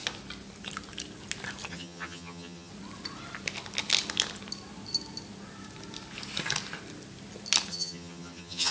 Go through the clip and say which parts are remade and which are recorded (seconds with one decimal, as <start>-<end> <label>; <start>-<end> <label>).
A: 0.0-1.7 recorded; 1.7-2.7 remade; 2.7-7.7 recorded; 7.7-8.7 remade